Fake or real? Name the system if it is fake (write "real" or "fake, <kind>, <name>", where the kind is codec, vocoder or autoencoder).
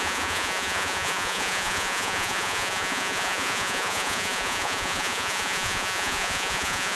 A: fake, vocoder, Vocos